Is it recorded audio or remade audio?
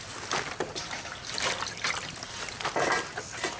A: recorded